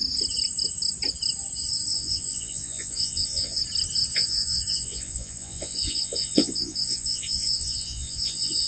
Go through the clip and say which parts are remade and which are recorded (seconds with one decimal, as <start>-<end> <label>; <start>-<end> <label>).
0.0-1.9 recorded; 1.9-3.6 remade; 3.6-4.1 recorded; 4.1-8.7 remade